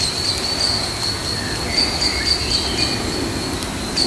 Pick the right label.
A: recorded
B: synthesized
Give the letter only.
A